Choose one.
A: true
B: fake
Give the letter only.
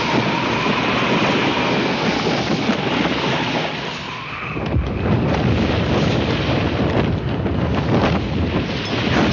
A